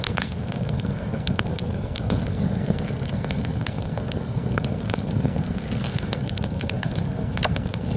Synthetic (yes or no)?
yes